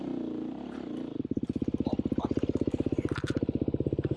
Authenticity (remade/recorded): recorded